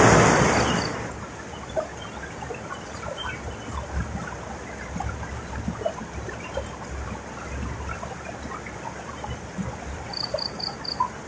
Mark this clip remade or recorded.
recorded